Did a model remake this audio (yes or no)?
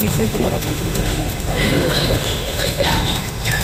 yes